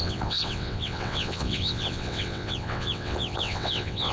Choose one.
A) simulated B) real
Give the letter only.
A